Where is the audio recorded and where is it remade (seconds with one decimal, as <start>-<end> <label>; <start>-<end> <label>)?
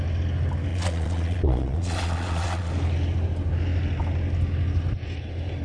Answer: 0.0-0.7 recorded; 0.7-2.7 remade; 2.7-5.6 recorded